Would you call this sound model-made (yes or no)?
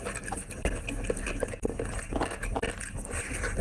no